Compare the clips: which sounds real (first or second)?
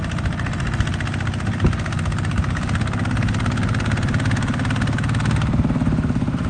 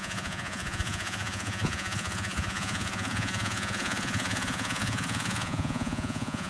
first